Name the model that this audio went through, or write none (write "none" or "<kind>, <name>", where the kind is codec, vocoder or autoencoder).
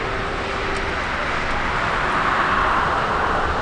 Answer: none